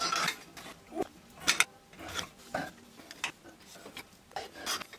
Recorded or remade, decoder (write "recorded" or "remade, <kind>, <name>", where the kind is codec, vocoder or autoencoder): recorded